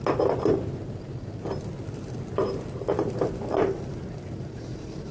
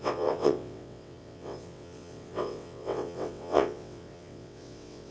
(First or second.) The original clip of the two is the first